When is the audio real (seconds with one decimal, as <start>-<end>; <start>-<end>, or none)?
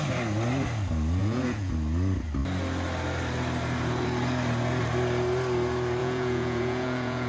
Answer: 0.0-1.2; 1.7-6.0